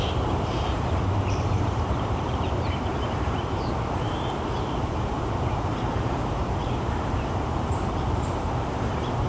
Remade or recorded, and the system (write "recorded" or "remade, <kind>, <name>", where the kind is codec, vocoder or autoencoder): remade, vocoder, BigVGAN v2